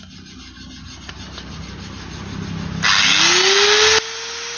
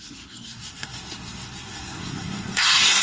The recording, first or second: first